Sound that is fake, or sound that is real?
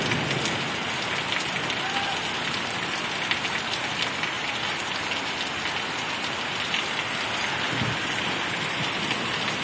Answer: real